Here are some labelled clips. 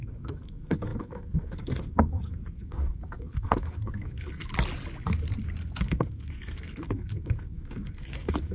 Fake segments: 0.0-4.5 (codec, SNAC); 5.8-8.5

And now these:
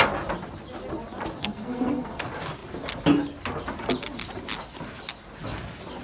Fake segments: 1.4-2.2 (codec, SNAC)